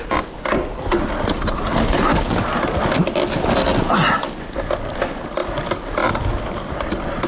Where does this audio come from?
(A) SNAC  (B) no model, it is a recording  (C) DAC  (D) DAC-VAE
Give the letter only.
B